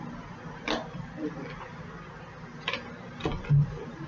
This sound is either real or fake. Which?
real